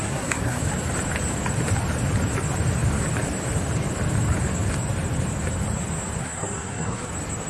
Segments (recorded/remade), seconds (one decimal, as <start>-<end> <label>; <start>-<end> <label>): 0.0-0.6 remade; 0.6-6.2 recorded; 6.2-7.1 remade; 7.1-7.5 recorded